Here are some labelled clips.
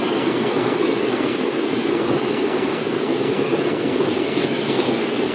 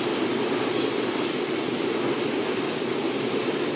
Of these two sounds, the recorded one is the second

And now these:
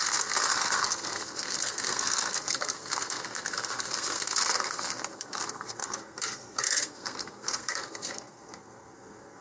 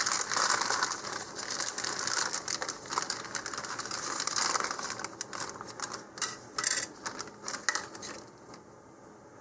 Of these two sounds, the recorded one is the second